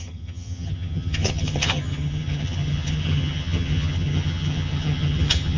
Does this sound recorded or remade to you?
remade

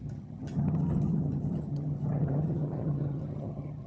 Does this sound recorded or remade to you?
remade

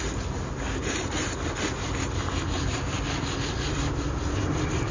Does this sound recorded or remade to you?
recorded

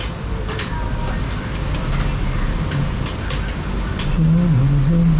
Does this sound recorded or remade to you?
recorded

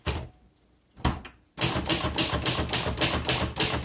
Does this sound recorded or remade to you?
recorded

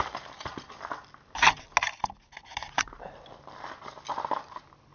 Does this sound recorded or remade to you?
recorded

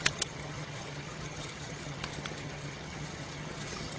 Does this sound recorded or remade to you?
remade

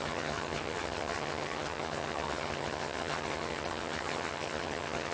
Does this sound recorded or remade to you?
remade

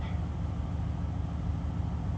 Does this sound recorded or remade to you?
recorded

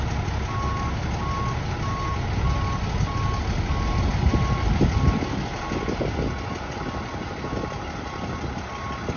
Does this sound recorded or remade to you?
recorded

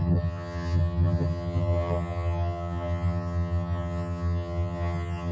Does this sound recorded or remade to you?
remade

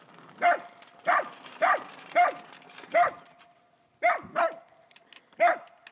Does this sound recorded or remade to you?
recorded